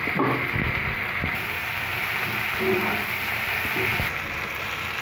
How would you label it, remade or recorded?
recorded